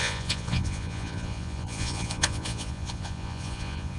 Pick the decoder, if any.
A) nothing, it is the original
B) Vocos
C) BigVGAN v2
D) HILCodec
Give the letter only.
B